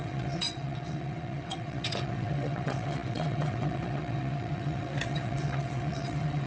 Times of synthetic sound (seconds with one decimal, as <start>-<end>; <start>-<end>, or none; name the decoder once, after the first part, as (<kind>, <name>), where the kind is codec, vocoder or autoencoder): 0.0-6.5 (vocoder, WaveNeXt)